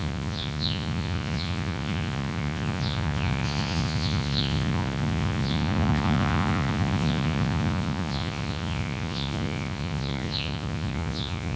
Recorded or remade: remade